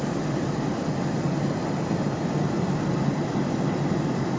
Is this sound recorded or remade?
recorded